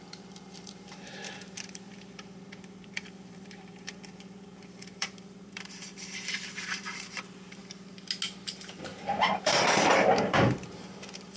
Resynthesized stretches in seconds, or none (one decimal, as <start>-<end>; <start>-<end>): 0.0-7.6; 8.5-11.4